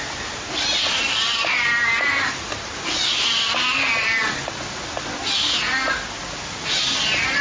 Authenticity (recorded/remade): recorded